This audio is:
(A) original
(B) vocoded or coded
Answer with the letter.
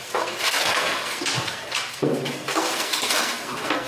B